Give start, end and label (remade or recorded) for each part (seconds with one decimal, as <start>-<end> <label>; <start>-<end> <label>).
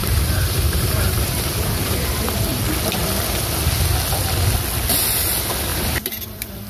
0.0-2.6 remade; 2.6-5.7 recorded; 5.7-6.7 remade